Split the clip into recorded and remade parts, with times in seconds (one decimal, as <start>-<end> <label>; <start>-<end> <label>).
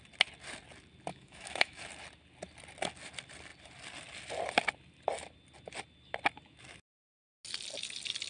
0.0-1.1 recorded; 1.1-1.8 remade; 1.8-8.3 recorded